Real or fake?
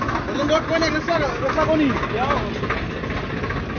real